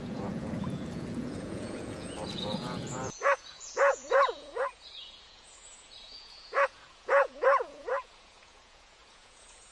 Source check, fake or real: fake